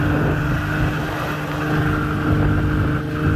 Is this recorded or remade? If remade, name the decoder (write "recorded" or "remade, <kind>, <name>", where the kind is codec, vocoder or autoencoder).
recorded